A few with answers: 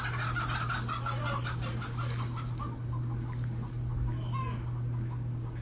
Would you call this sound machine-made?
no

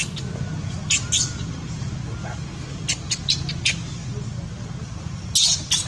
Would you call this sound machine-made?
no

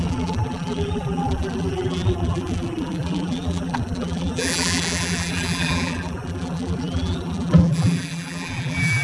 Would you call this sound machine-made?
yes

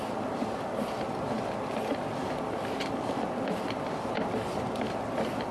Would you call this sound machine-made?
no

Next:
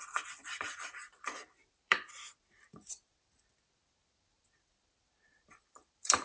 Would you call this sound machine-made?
yes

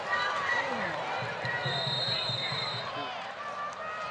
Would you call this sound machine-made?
no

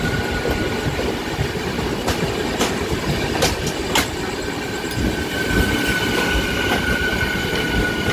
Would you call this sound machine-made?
no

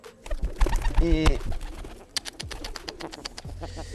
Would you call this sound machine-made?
no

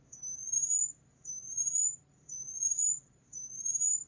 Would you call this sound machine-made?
yes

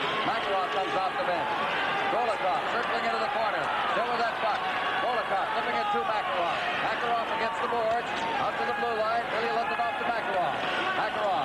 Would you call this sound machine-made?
no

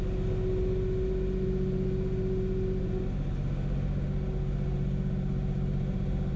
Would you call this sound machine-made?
no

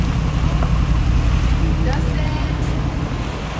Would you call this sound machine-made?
no